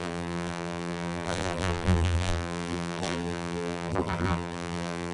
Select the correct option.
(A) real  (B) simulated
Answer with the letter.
B